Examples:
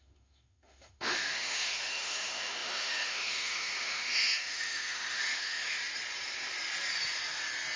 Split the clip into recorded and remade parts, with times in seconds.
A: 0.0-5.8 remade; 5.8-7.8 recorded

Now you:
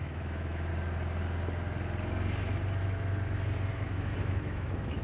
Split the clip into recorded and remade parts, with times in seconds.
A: 0.0-0.7 remade; 0.7-3.7 recorded; 3.7-5.0 remade

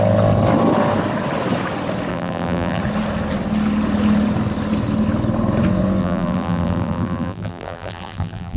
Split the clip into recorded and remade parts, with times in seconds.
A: 0.0-2.1 recorded; 2.1-2.8 remade; 2.8-6.0 recorded; 6.0-8.6 remade

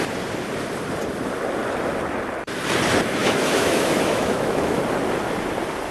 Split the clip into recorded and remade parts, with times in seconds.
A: 0.0-3.2 recorded; 3.2-4.8 remade; 4.8-5.9 recorded

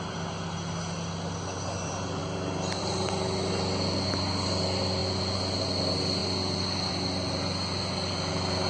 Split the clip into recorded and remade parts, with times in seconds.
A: 0.0-8.7 recorded

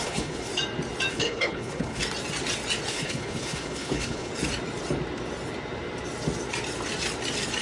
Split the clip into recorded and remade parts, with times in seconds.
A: 0.0-0.5 remade; 0.5-1.1 recorded; 1.1-2.0 remade; 2.0-2.9 recorded; 2.9-4.3 remade; 4.3-7.6 recorded

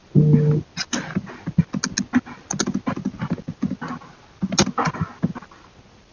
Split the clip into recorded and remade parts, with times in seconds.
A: 0.0-6.1 recorded